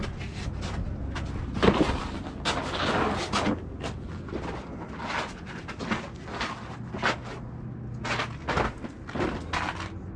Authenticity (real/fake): real